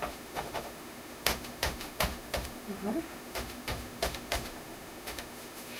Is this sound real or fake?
fake